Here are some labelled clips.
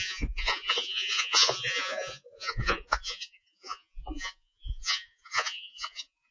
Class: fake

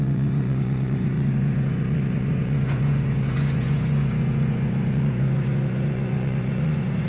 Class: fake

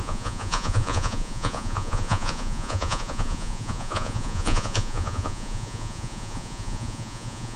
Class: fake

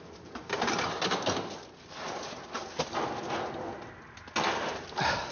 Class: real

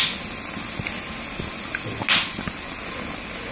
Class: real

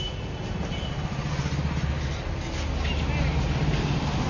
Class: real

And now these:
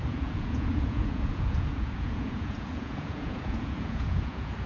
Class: fake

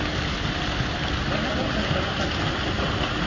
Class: real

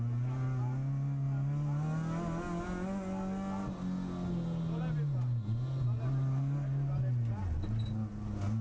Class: real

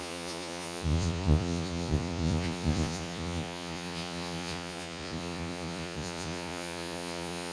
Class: fake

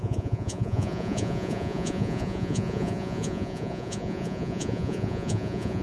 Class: fake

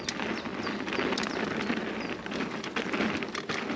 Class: real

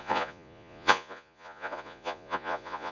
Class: fake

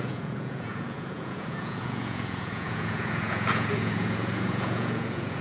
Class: fake